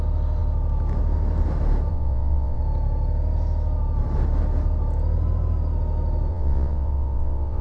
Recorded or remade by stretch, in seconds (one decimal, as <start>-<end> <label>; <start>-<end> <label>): 0.0-1.9 recorded; 1.9-2.6 remade; 2.6-6.3 recorded; 6.3-7.6 remade

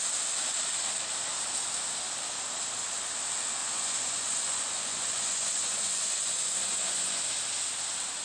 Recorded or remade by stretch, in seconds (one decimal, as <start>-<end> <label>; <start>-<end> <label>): 0.0-3.6 recorded; 3.6-7.2 remade; 7.2-8.2 recorded

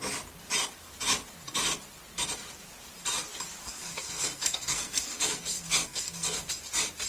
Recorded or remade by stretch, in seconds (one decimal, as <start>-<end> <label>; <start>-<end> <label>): 0.0-3.6 recorded; 3.6-6.5 remade; 6.5-7.1 recorded

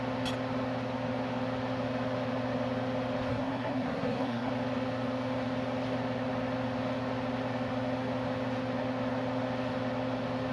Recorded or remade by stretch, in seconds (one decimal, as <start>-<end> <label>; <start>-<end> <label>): 0.0-3.3 recorded; 3.3-4.5 remade; 4.5-10.5 recorded

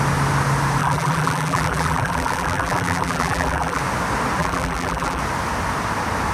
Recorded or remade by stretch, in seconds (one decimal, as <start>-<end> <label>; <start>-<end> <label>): 0.0-0.8 recorded; 0.8-3.8 remade; 3.8-4.4 recorded; 4.4-5.2 remade; 5.2-6.3 recorded

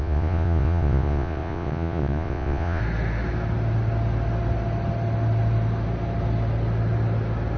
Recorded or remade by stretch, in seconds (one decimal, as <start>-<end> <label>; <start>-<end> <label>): 0.0-2.8 remade; 2.8-7.6 recorded